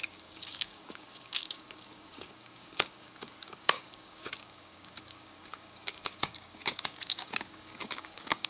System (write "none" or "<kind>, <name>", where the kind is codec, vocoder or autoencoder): codec, DAC